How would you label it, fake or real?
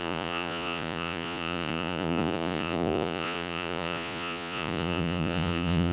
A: fake